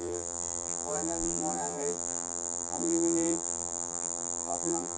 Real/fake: fake